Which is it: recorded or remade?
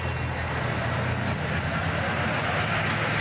recorded